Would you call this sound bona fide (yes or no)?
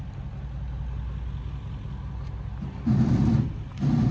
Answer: yes